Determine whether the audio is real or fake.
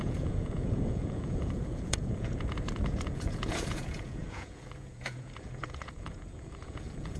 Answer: fake